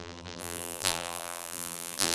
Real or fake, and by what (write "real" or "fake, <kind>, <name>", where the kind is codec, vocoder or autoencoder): fake, vocoder, BigVGAN v2